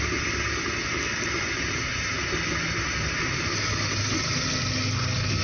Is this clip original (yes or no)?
yes